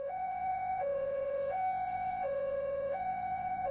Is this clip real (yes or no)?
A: no